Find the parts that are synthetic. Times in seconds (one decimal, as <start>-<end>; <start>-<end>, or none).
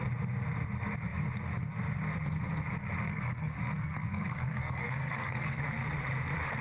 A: 3.1-5.6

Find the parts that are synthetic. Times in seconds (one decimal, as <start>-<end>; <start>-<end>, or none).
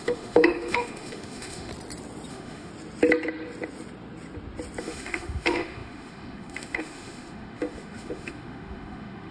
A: 0.0-1.7; 2.3-2.7; 4.8-9.3